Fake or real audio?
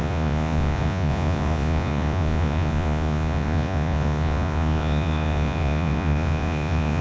fake